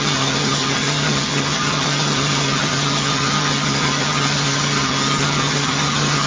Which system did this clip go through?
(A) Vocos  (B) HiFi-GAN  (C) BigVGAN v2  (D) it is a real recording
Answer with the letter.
B